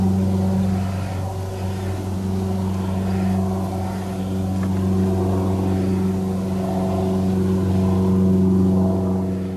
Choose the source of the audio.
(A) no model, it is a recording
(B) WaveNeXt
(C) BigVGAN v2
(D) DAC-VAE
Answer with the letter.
A